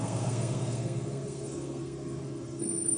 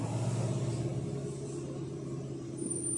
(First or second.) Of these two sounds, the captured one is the second